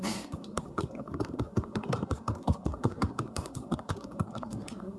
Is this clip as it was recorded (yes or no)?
no